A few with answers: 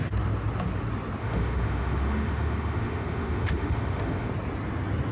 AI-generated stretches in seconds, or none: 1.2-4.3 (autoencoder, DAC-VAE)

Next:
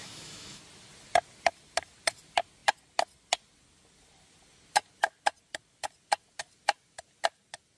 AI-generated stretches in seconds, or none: 0.0-0.6 (autoencoder, DAC-VAE)

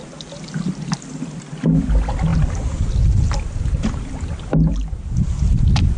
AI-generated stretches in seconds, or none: none

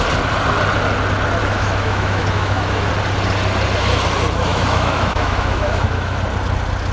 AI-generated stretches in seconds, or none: 1.4-2.9 (autoencoder, DAC-VAE); 4.5-6.2

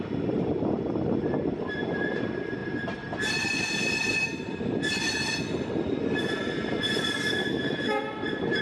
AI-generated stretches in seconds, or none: 7.4-8.0 (autoencoder, DAC-VAE)

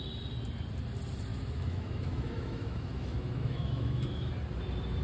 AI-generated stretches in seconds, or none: 1.3-4.3 (autoencoder, DAC-VAE)